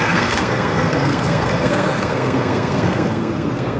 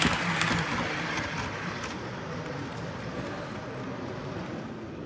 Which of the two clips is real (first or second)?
second